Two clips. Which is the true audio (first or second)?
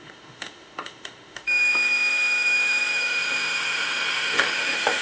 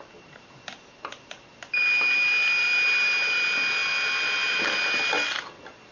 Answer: second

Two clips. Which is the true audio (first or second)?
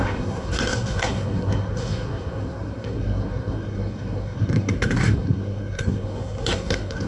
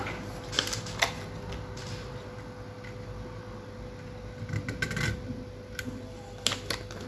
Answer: second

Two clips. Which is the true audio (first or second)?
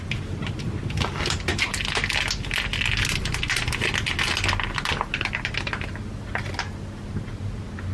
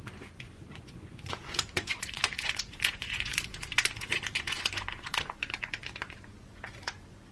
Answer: first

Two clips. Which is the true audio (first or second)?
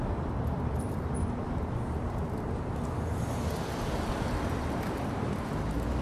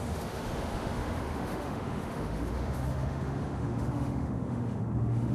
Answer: first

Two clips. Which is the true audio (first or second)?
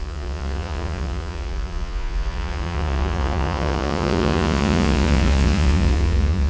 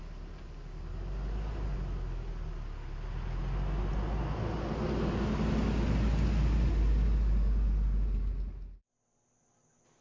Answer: second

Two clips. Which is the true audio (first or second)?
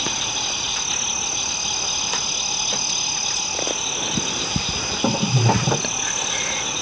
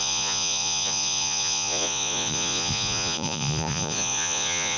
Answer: first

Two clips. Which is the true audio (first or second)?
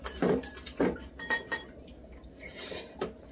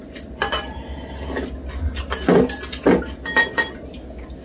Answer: second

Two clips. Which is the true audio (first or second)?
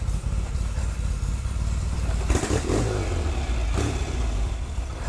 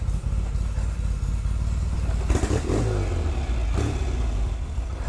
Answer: second